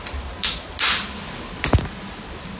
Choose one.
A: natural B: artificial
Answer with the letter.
A